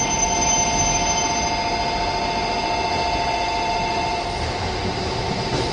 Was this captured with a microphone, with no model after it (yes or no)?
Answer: yes